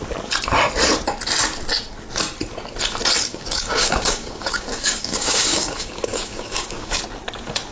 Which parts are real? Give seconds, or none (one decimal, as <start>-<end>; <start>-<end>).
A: 0.0-3.3; 7.0-7.7